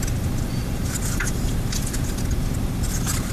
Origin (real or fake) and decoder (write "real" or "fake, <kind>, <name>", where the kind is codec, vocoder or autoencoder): real